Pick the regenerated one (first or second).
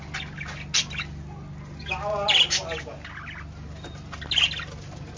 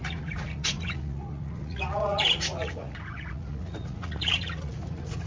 second